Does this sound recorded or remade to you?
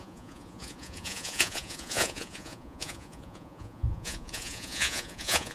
remade